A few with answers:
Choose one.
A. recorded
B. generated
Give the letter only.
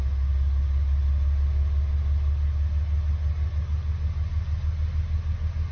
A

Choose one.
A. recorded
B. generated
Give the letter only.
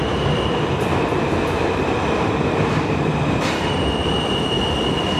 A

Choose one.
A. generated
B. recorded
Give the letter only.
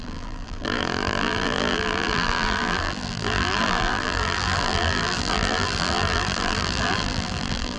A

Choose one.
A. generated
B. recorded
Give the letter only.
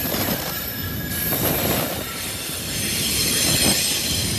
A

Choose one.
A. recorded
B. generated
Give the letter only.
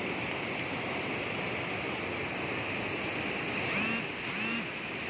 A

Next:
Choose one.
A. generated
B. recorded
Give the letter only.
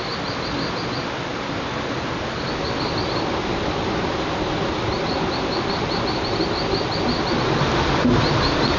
B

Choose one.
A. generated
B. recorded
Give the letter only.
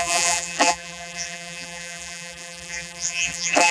A